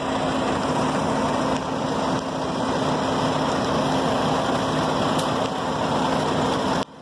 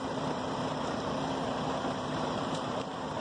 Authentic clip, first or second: first